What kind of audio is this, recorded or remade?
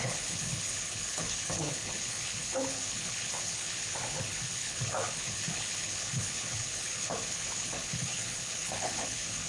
remade